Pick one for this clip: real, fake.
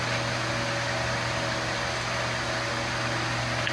real